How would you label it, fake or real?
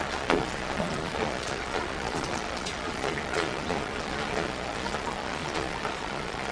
fake